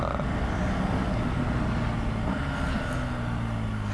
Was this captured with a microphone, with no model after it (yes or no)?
yes